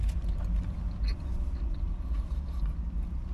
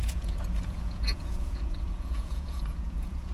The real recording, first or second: first